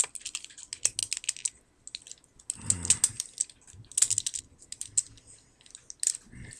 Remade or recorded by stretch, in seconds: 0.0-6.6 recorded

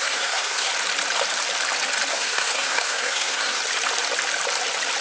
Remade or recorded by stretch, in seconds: 0.0-0.7 remade; 0.7-2.1 recorded; 2.1-3.6 remade; 3.6-5.0 recorded